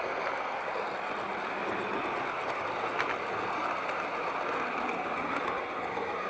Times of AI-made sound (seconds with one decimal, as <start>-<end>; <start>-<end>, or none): none